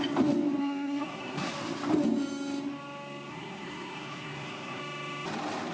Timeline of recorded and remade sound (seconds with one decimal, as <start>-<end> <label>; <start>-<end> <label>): 0.0-0.6 recorded; 0.6-1.5 remade; 1.5-3.3 recorded; 3.3-4.8 remade; 4.8-5.7 recorded